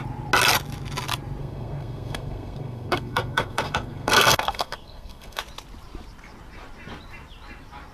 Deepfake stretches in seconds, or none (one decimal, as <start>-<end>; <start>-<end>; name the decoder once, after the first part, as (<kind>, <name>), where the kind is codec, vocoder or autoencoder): 1.4-5.4 (codec, SNAC)